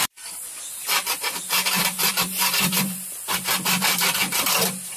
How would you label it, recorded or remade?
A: remade